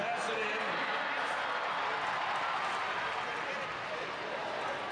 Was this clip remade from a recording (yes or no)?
no